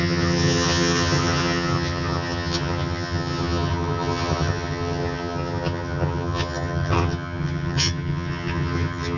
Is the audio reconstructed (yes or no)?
yes